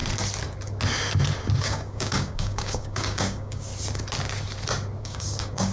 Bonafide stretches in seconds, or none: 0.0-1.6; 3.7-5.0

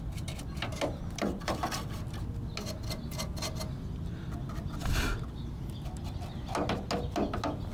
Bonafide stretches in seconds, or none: 0.0-7.7

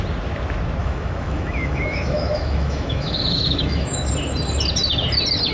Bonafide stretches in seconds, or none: 0.0-0.8; 4.1-5.5

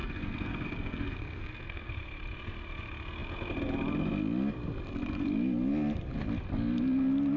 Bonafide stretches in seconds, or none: 1.9-7.4

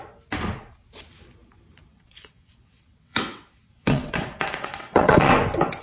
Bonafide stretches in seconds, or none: 0.0-1.9; 5.3-5.8

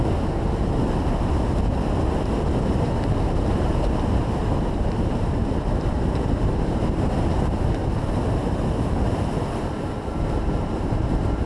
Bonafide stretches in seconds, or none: 0.0-2.6; 7.8-10.4

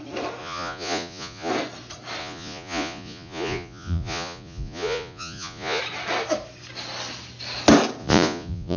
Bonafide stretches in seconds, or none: 0.0-0.4; 1.5-2.2; 5.8-8.0